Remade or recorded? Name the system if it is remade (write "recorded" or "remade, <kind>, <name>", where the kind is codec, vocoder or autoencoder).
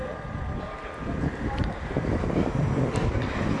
recorded